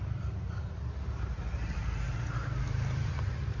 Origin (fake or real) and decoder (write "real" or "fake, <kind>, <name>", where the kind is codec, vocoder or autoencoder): fake, vocoder, BigVGAN v2